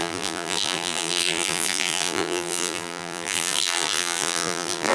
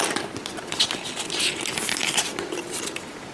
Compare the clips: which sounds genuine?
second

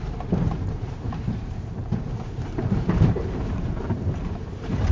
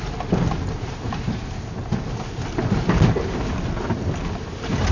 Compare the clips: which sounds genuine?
second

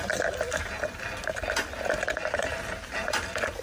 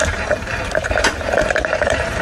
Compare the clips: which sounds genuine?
first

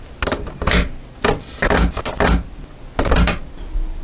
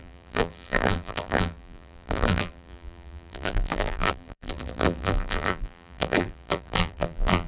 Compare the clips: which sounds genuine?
first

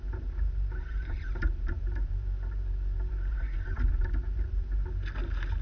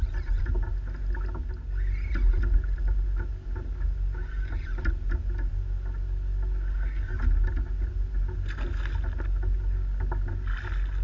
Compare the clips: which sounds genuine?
second